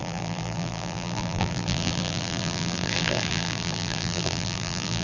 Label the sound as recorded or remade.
remade